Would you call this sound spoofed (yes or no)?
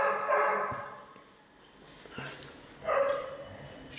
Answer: no